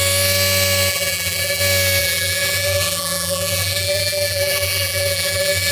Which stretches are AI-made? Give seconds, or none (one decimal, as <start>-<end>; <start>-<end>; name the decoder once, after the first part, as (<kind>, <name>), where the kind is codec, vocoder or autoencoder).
0.9-1.6 (vocoder, BigVGAN v2); 2.0-5.7

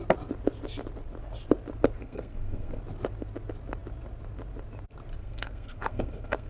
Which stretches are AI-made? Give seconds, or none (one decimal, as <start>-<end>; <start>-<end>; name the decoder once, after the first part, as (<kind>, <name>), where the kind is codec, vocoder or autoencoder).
2.0-2.8 (codec, SNAC); 5.2-6.5

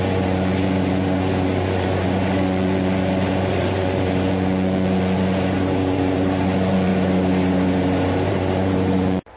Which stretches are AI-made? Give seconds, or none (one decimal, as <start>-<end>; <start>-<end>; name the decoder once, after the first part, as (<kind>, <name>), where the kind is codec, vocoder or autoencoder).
0.0-6.9 (vocoder, Vocos); 8.3-9.4

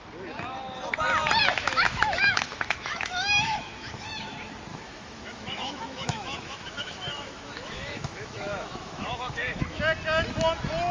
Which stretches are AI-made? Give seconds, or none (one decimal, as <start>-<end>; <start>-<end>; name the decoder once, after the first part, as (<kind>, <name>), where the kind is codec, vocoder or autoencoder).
1.5-4.3 (autoencoder, DAC-VAE); 4.7-9.8

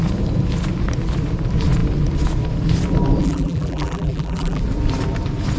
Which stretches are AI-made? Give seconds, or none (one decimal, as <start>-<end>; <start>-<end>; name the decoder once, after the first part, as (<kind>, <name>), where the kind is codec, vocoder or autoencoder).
3.2-4.6 (vocoder, BigVGAN v2)

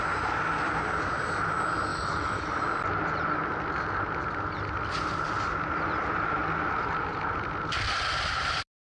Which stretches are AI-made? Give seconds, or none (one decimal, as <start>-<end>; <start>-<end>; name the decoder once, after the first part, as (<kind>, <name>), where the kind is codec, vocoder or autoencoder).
1.9-2.6 (autoencoder, DAC-VAE)

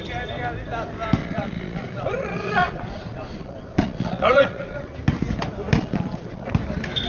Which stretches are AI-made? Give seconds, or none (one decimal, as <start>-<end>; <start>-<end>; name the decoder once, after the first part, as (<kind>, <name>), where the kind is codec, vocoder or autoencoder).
1.2-4.9 (vocoder, Vocos); 5.8-6.5

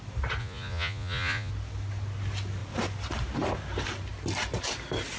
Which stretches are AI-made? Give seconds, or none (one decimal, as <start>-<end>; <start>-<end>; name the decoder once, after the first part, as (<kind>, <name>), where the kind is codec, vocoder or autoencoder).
0.4-1.5 (vocoder, Vocos)